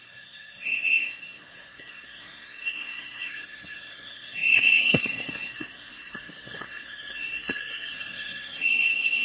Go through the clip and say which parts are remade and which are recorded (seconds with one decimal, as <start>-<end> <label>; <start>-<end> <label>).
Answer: 0.0-9.2 remade